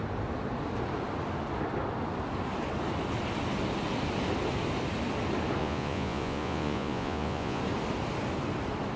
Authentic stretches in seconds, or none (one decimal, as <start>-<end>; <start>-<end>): 0.0-5.6; 7.6-9.0